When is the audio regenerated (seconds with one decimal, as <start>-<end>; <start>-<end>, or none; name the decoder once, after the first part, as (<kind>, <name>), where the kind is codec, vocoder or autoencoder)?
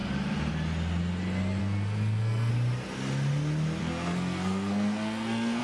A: 1.6-2.5 (codec, SNAC); 3.8-5.6